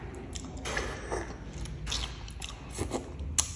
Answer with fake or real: real